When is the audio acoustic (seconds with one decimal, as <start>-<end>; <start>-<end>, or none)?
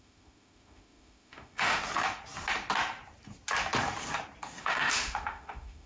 1.8-4.6